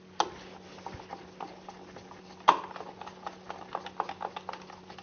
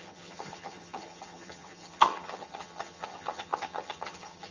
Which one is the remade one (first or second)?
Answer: second